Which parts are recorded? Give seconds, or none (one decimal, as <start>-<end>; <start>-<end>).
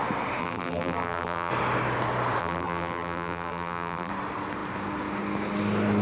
0.0-0.4; 1.5-2.4; 4.1-6.0